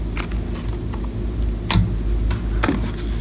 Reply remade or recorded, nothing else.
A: recorded